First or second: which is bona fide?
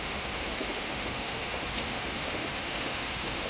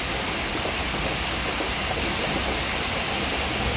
second